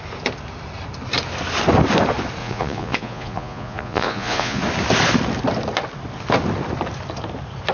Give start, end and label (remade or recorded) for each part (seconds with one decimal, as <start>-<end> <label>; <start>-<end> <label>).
0.0-2.4 recorded; 2.4-4.6 remade; 4.6-7.7 recorded